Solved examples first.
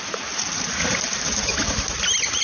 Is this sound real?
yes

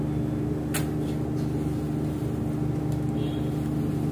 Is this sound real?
yes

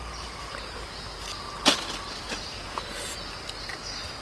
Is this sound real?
yes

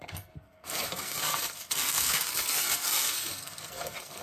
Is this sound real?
no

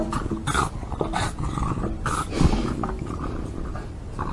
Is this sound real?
yes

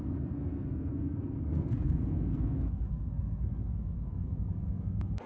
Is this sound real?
no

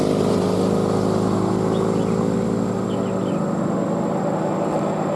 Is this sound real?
yes